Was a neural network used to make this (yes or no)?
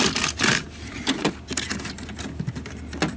no